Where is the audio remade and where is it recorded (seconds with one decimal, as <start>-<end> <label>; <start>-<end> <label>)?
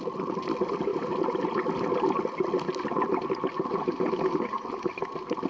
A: 0.0-5.5 recorded